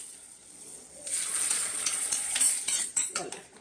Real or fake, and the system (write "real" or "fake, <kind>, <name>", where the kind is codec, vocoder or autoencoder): fake, vocoder, Vocos